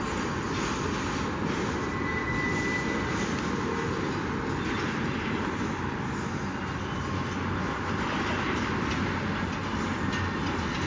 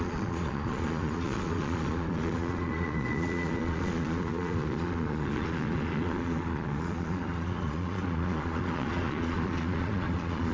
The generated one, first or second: second